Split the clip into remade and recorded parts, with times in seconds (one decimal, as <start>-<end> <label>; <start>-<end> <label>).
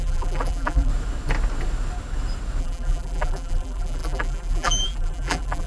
0.0-0.9 remade; 0.9-2.6 recorded; 2.6-5.7 remade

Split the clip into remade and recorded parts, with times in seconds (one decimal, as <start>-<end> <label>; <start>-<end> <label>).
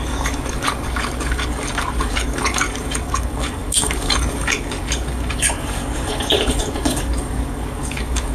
0.0-8.3 remade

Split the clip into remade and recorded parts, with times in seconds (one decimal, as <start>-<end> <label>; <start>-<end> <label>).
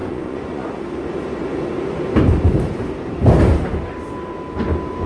0.0-0.8 remade; 0.8-5.1 recorded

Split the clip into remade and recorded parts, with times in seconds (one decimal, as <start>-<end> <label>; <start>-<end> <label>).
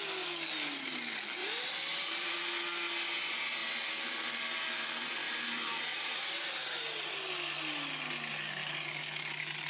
0.0-1.4 recorded; 1.4-2.3 remade; 2.3-5.2 recorded; 5.2-7.2 remade; 7.2-9.7 recorded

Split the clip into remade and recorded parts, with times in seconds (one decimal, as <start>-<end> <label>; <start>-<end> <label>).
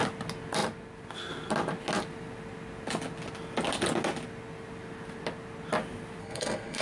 0.0-6.2 recorded; 6.2-6.8 remade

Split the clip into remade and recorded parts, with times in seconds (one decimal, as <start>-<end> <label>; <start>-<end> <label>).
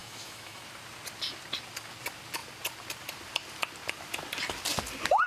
0.0-0.6 remade; 0.6-5.3 recorded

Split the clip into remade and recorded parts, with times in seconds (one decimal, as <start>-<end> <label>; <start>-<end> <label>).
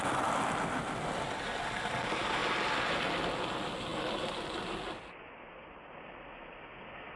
0.0-7.2 recorded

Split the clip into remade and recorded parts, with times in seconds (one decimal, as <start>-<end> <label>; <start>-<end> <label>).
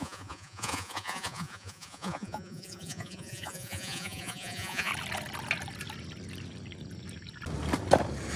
0.0-4.9 remade; 4.9-8.4 recorded